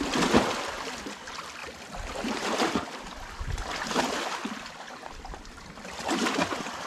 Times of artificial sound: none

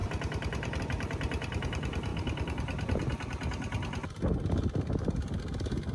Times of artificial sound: 0.0-0.8 (vocoder, BigVGAN v2)